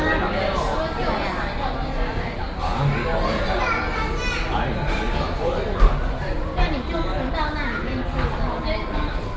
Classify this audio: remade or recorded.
recorded